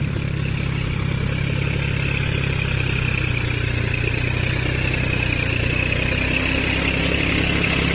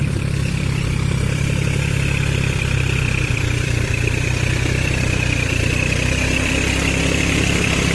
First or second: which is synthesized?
second